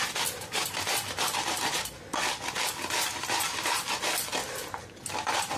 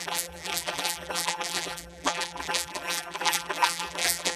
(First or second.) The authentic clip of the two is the first